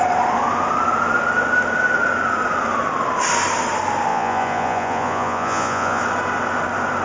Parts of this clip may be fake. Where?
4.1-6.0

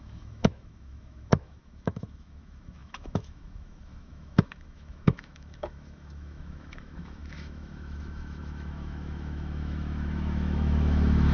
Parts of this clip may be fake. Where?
0.0-11.3

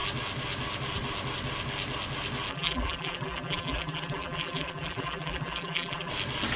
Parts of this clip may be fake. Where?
2.5-6.1

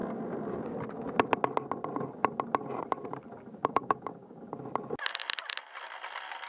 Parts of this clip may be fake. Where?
3.6-4.4

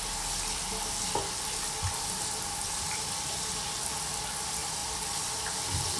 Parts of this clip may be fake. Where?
none